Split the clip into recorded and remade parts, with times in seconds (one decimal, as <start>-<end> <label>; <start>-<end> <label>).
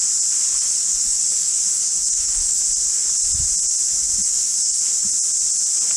0.0-0.5 recorded; 0.5-2.6 remade; 2.6-4.2 recorded; 4.2-4.8 remade; 4.8-6.0 recorded